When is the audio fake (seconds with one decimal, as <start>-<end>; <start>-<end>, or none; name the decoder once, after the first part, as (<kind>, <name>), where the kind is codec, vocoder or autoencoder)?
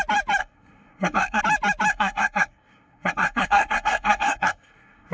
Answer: 0.4-1.4 (codec, SNAC); 1.9-5.1